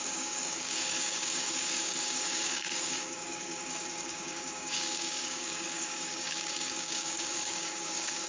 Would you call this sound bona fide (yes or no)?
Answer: no